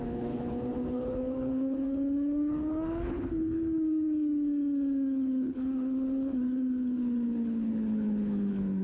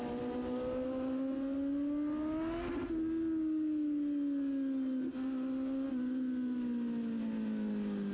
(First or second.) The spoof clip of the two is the first